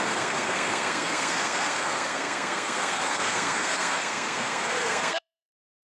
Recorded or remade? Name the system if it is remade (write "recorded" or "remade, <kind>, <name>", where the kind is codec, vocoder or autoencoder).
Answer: remade, codec, SNAC